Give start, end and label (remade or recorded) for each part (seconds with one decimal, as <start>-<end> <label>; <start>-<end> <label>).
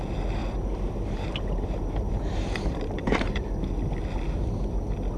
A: 0.0-0.4 recorded; 0.4-3.5 remade; 3.5-5.2 recorded